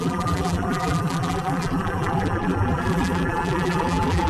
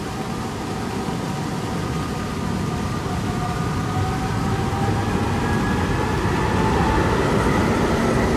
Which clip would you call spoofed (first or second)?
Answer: first